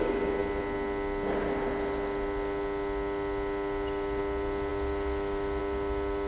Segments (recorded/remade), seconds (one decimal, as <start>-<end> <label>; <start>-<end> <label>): 0.0-6.3 recorded